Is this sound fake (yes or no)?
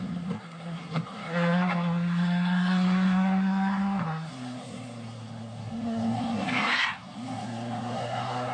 yes